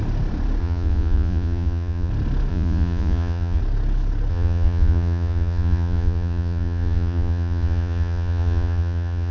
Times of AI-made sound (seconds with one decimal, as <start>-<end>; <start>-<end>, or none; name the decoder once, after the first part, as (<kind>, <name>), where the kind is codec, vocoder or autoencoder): 0.6-2.1 (vocoder, Vocos); 2.5-3.6; 4.3-9.3